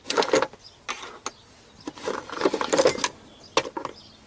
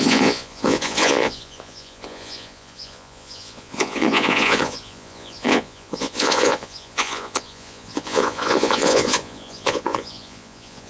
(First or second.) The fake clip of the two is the second